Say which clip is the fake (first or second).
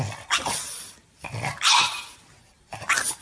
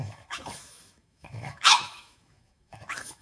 second